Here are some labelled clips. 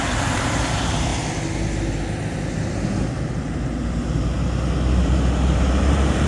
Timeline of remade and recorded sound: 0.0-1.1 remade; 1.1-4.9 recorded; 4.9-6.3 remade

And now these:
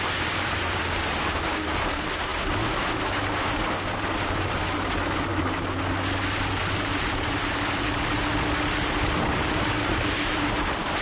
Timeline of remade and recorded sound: 0.0-2.3 remade; 2.3-4.1 recorded; 4.1-5.3 remade; 5.3-6.6 recorded; 6.6-8.3 remade; 8.3-8.8 recorded; 8.8-11.0 remade